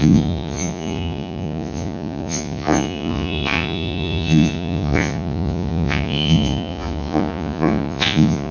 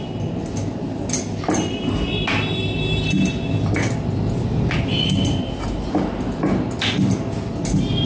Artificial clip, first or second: first